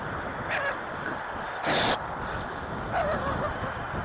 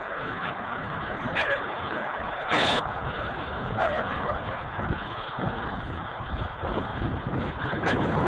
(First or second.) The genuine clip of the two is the first